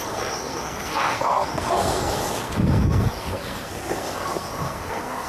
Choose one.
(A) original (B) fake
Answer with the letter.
B